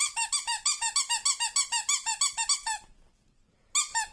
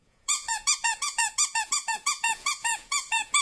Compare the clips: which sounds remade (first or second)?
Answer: second